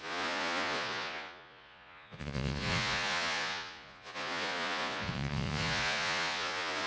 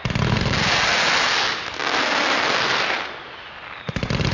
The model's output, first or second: first